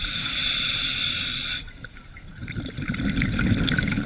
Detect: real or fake real